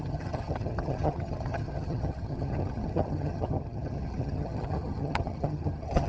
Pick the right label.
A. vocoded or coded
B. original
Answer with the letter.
A